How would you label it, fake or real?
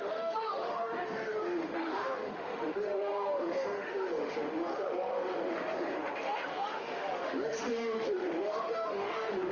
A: fake